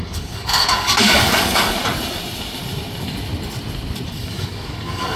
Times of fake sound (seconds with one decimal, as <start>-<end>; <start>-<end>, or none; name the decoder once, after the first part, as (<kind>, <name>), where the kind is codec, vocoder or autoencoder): 0.0-1.8 (codec, DAC); 4.1-5.2